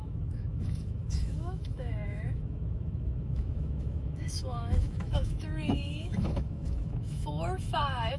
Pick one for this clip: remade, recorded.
remade